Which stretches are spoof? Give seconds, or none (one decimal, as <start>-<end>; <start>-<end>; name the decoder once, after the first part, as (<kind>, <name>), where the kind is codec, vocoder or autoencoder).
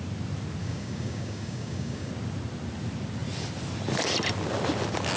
0.6-2.1 (codec, DAC)